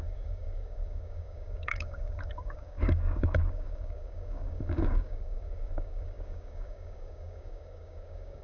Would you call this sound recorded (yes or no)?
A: no